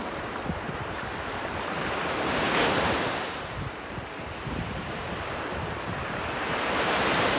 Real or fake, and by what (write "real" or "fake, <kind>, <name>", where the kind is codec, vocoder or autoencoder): fake, vocoder, BigVGAN v2